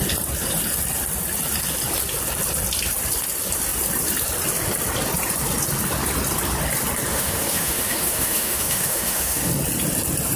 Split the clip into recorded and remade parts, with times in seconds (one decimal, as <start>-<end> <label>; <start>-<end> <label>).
0.0-7.1 recorded; 7.1-9.5 remade; 9.5-10.4 recorded